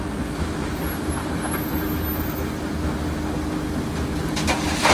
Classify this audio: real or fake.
real